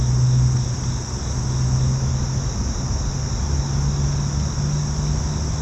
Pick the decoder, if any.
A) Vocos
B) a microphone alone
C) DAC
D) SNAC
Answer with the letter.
B